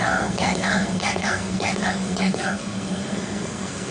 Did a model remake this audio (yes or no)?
yes